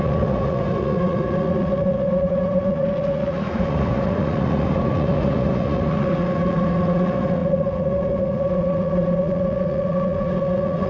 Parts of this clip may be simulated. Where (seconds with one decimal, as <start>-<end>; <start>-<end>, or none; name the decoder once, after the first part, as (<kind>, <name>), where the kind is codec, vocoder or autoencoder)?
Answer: 0.0-10.9 (vocoder, Vocos)